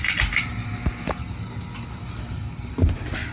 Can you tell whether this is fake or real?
real